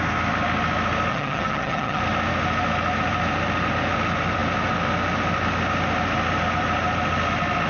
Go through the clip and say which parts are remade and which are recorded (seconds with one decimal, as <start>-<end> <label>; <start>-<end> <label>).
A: 0.0-1.1 recorded; 1.1-2.0 remade; 2.0-7.7 recorded

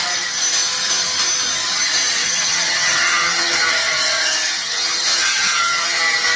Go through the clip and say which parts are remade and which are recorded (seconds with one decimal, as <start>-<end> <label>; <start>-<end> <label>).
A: 0.0-2.2 recorded; 2.2-6.0 remade; 6.0-6.4 recorded

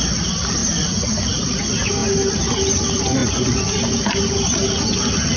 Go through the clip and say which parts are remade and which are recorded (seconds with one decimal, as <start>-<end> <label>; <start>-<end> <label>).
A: 0.0-5.4 recorded

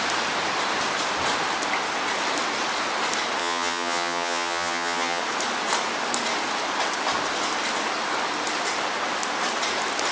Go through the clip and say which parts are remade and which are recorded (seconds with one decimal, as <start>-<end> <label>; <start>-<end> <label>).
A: 0.0-3.4 recorded; 3.4-5.2 remade; 5.2-10.1 recorded

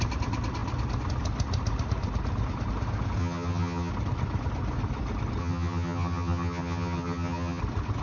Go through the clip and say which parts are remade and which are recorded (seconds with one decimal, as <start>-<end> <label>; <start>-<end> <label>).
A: 0.0-3.2 recorded; 3.2-3.9 remade; 3.9-5.4 recorded; 5.4-7.6 remade; 7.6-8.0 recorded